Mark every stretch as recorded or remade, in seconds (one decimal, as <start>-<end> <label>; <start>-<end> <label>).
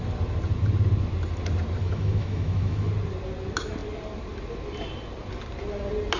0.0-1.8 recorded; 1.8-2.9 remade; 2.9-6.2 recorded